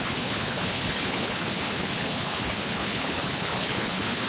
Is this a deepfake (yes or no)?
yes